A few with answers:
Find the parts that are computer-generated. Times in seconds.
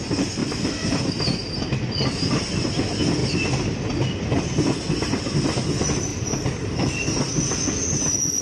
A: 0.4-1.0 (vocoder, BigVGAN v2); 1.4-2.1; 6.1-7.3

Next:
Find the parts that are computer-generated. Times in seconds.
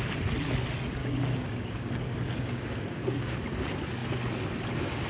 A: 1.0-3.4 (codec, DAC)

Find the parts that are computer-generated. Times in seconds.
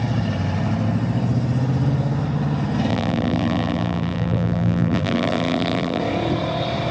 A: 2.9-6.0 (vocoder, BigVGAN v2)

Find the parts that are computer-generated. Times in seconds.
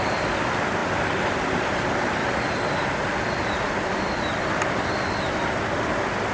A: none